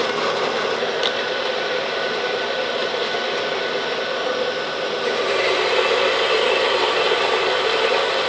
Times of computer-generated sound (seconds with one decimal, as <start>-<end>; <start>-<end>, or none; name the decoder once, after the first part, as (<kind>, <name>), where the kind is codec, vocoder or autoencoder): none